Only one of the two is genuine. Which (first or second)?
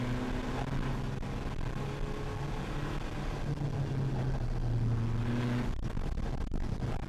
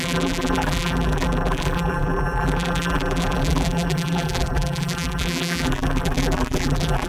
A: first